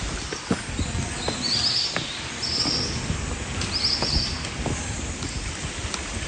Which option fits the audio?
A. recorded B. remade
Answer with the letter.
A